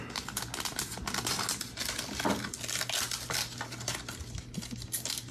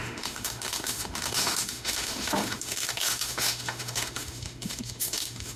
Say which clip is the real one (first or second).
first